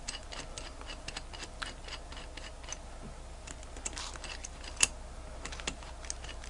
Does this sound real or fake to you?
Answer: real